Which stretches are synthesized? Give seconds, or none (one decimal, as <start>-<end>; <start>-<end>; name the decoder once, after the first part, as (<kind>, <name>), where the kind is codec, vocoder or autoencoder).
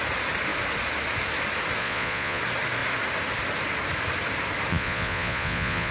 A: 1.8-2.4 (vocoder, Vocos); 4.7-5.9